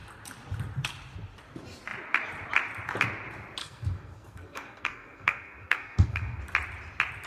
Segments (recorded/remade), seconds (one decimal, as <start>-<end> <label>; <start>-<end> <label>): 0.0-3.6 recorded; 3.6-6.4 remade; 6.4-7.3 recorded